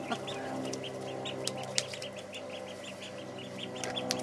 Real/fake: real